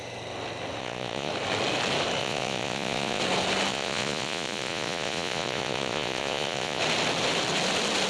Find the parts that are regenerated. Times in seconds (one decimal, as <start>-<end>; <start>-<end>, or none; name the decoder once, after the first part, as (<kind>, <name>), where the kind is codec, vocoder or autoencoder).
0.8-1.3 (vocoder, Vocos); 2.2-3.2; 3.7-6.8